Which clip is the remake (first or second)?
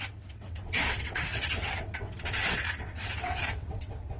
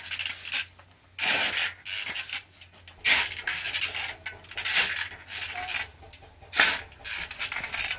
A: first